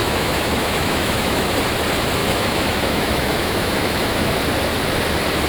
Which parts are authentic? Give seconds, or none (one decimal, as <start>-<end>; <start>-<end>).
1.5-2.2; 4.3-5.5